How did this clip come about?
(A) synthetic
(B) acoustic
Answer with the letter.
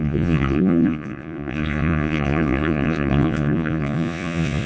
A